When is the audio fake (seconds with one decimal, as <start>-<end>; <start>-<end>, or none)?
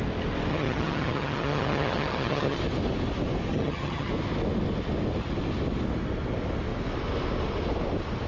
0.5-2.6; 3.5-4.1